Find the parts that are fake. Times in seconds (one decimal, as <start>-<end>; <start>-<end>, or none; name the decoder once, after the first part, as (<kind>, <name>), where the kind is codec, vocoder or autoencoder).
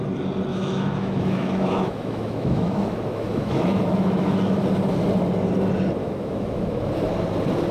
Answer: 0.5-4.6 (autoencoder, DAC-VAE); 6.0-6.9